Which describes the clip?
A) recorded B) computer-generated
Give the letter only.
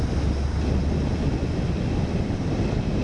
A